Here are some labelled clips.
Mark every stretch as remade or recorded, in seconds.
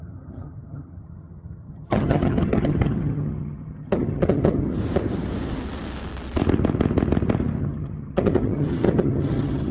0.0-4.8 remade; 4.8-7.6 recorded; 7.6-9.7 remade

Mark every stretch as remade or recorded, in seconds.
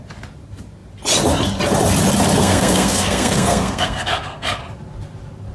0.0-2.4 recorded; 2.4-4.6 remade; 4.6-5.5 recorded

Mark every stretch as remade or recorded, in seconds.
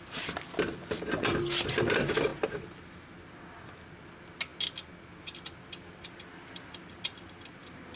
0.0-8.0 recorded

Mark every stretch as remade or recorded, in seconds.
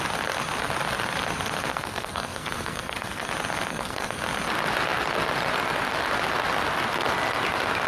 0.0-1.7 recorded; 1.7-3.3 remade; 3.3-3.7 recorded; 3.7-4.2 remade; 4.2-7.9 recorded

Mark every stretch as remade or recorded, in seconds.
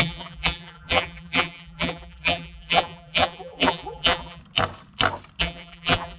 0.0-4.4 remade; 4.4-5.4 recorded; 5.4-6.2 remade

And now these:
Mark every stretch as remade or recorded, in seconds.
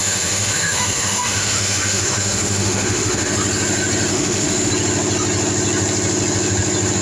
0.0-3.3 remade; 3.3-4.1 recorded; 4.1-4.7 remade; 4.7-7.0 recorded